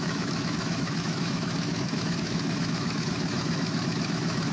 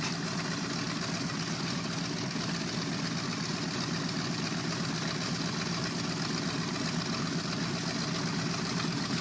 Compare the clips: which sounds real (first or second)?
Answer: second